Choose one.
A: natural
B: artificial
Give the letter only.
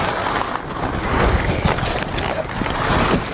A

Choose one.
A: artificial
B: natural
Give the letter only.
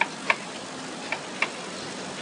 B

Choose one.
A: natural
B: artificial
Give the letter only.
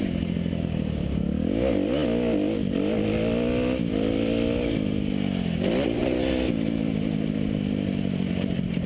A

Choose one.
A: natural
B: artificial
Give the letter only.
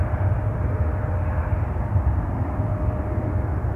A